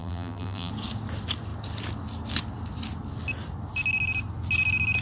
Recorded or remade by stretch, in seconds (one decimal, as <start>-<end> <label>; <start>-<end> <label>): 0.0-0.7 remade; 0.7-5.0 recorded